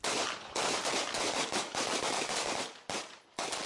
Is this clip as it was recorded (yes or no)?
yes